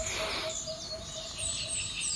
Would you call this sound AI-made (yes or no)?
no